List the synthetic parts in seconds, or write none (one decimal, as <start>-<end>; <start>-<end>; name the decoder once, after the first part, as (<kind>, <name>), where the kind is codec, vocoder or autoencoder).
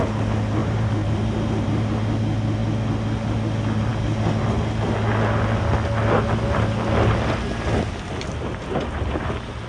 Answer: 0.6-2.1 (vocoder, BigVGAN v2)